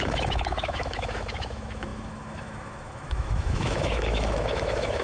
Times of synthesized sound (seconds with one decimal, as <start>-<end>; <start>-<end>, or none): 0.0-5.0